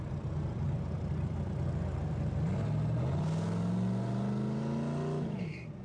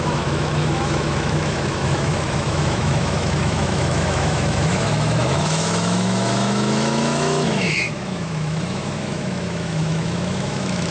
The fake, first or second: second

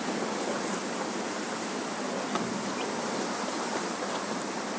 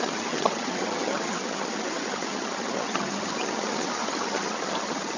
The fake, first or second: second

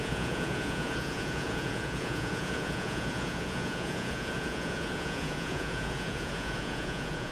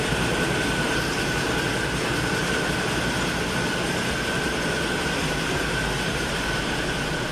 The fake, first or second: first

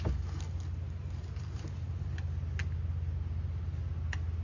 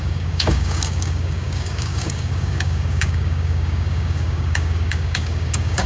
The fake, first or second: second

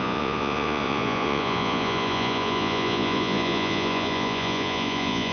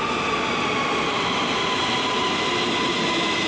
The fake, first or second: first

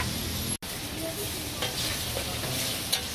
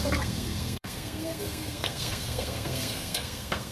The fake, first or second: second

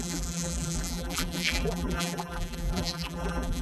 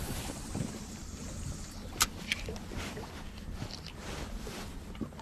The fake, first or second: first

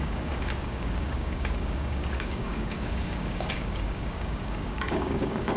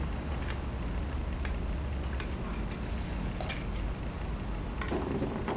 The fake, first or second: first